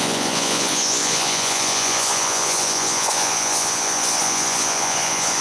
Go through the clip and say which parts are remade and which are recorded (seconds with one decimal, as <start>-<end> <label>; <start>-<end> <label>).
0.0-5.4 remade